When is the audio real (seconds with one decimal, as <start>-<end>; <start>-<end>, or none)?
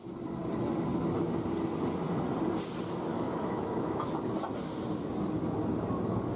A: 0.0-3.1; 4.1-6.4